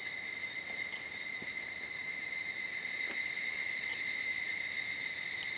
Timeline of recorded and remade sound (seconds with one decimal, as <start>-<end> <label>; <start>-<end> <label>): 0.0-5.6 recorded